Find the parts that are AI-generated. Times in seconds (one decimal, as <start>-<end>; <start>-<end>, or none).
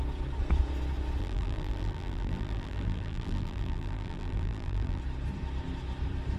1.2-5.0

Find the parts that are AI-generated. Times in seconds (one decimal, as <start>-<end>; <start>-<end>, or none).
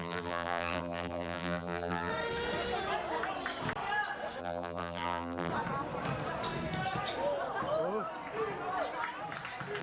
0.0-2.1; 4.4-5.5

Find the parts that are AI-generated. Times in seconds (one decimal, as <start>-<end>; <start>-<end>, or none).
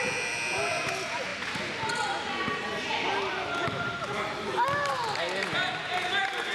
none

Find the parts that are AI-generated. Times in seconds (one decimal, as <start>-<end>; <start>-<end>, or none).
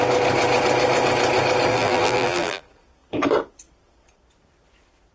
1.7-2.6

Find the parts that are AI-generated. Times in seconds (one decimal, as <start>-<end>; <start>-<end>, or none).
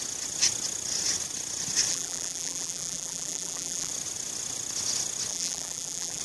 1.9-3.9; 5.3-6.2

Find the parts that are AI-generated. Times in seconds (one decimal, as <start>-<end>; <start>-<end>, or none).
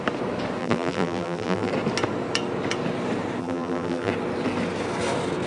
0.6-1.7; 3.4-4.1